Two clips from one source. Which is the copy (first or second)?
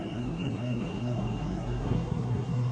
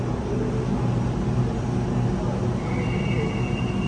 first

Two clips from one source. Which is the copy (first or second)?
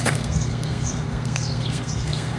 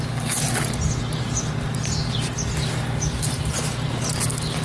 first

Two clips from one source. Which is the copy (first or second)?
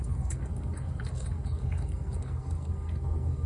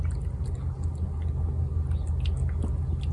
first